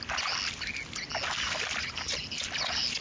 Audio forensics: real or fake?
real